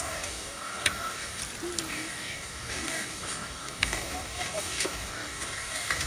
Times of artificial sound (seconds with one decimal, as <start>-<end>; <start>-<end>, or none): 0.0-1.4; 1.9-6.1